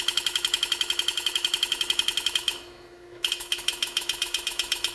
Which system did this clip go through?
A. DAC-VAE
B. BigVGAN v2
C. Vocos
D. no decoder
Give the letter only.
A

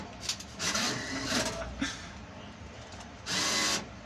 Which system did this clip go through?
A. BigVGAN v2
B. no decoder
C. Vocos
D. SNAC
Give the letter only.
A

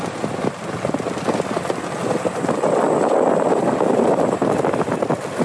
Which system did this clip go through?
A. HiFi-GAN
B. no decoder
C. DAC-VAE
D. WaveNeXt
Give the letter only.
B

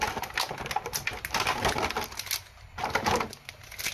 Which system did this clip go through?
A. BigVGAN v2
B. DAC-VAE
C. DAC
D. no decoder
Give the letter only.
D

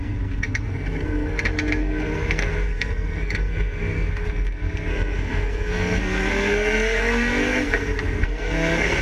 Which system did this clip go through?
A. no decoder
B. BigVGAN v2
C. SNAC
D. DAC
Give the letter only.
C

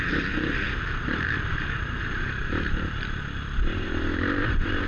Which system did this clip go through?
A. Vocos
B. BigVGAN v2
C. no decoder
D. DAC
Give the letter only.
B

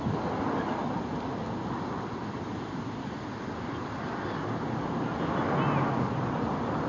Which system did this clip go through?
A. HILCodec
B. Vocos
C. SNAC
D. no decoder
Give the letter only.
D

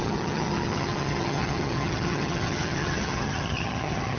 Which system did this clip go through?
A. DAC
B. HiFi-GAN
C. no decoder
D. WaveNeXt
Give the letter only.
B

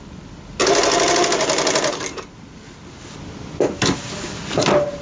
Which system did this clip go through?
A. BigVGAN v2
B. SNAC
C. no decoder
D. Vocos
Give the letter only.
C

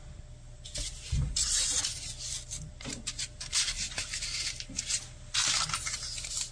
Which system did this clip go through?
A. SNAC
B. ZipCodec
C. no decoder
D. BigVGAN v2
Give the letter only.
C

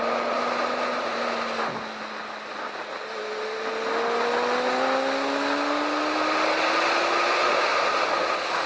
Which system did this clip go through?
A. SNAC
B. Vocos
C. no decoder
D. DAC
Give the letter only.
C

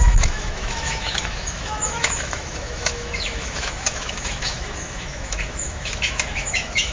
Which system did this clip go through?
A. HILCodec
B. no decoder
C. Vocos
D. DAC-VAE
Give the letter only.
D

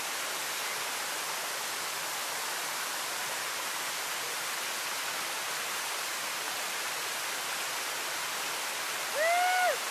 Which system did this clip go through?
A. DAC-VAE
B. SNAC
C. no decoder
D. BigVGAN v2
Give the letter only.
C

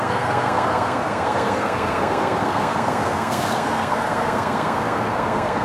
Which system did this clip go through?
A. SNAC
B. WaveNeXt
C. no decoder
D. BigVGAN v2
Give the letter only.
A